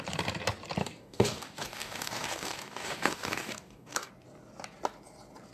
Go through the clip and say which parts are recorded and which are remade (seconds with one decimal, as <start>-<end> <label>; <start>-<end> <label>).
0.0-0.8 recorded; 0.8-4.1 remade; 4.1-5.5 recorded